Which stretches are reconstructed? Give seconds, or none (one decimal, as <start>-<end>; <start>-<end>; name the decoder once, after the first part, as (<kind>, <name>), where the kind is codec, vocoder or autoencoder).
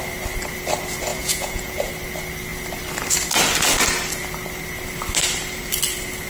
1.1-1.9 (vocoder, Vocos)